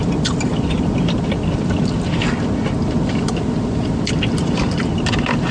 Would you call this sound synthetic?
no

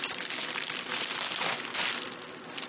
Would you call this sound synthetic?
no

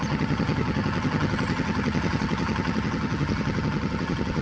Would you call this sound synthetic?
yes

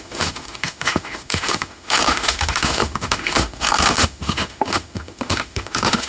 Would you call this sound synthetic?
yes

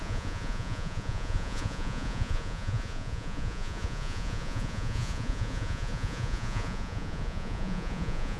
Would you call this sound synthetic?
yes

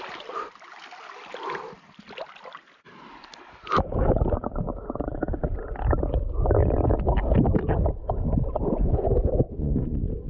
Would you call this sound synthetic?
no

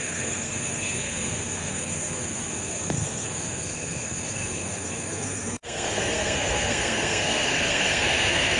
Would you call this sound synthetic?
yes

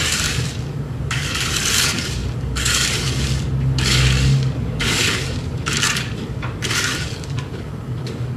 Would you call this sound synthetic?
yes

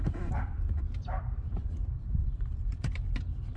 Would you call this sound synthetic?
yes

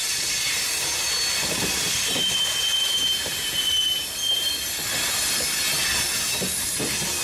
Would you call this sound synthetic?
no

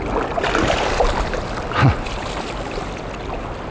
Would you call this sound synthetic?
no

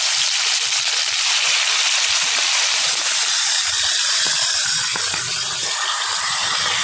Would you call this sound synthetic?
yes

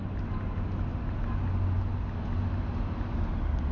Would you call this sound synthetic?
no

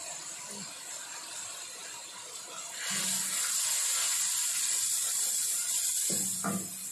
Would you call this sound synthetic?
no